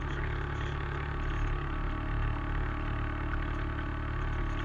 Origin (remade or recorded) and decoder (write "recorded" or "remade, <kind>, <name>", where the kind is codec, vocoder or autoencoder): recorded